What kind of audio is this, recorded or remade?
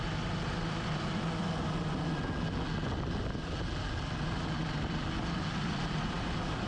recorded